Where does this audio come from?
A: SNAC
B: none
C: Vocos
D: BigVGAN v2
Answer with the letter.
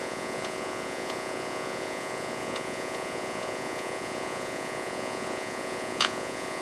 C